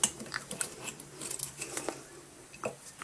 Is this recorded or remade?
recorded